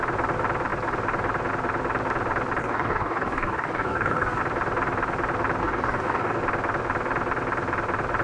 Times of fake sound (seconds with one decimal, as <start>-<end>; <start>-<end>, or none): 2.6-4.4; 5.6-6.4